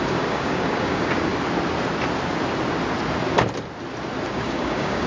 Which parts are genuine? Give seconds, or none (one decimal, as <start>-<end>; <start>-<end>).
1.3-4.3